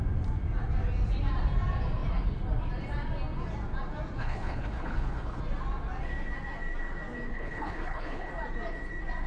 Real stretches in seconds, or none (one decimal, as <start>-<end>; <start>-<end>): 0.0-4.2; 5.4-7.3; 8.3-9.3